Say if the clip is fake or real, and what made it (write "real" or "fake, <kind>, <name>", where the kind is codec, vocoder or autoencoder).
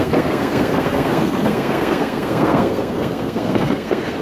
fake, codec, SNAC